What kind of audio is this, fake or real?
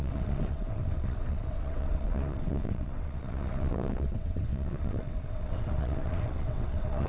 fake